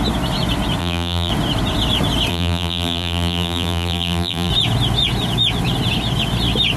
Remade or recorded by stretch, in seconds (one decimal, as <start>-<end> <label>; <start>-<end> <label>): 0.0-0.8 recorded; 0.8-1.3 remade; 1.3-2.3 recorded; 2.3-4.5 remade; 4.5-6.8 recorded